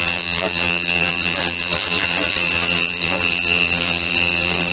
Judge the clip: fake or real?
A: fake